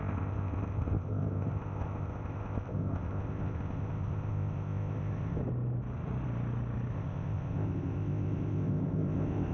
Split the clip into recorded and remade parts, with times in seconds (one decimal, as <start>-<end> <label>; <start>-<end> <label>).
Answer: 0.0-5.4 remade; 5.4-6.9 recorded; 6.9-9.5 remade